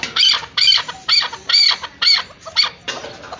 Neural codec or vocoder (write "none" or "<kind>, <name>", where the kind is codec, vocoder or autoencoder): none